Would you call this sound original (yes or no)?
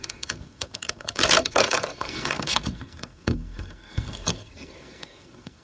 no